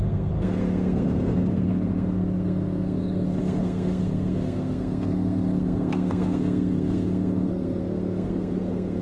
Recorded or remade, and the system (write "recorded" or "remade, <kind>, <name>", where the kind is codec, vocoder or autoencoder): remade, codec, SNAC